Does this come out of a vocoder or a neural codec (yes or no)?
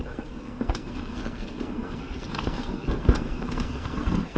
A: yes